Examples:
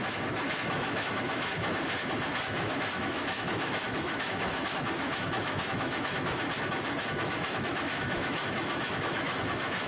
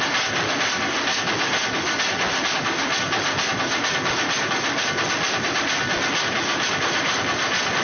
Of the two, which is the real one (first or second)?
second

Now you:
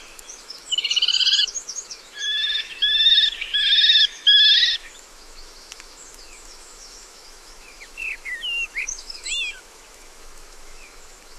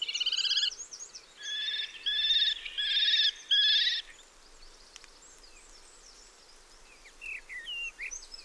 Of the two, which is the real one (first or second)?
second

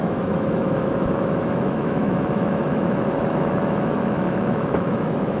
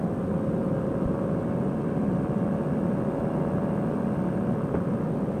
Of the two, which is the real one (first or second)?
second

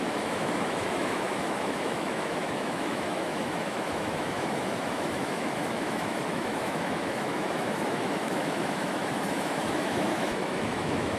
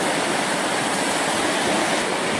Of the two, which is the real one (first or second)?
second